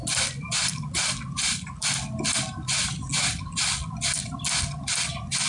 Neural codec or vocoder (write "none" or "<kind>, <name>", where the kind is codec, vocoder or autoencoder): none